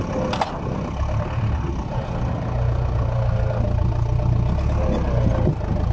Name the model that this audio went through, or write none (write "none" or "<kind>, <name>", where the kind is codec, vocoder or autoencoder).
none